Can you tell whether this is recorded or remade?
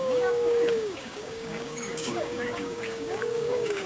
remade